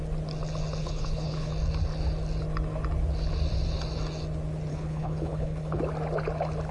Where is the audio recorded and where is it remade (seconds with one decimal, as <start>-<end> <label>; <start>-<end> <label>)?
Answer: 0.0-0.8 recorded; 0.8-1.5 remade; 1.5-4.7 recorded; 4.7-5.8 remade; 5.8-6.7 recorded